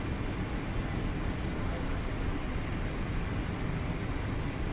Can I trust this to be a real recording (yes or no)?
yes